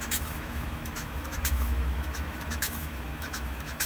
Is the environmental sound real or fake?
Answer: fake